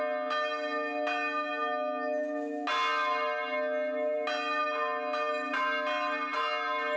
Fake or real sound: real